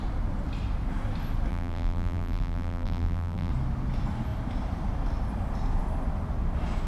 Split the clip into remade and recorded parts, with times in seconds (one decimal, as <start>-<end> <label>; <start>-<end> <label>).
0.0-1.5 recorded; 1.5-3.5 remade; 3.5-6.9 recorded